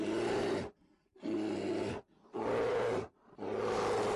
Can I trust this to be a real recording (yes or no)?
yes